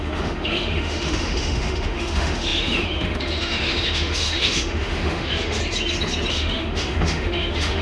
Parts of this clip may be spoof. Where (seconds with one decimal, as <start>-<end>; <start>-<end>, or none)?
0.0-5.6; 6.3-7.8